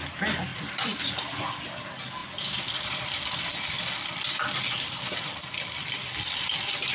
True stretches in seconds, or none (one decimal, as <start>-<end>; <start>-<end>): 0.0-0.5; 1.1-2.2; 6.3-6.9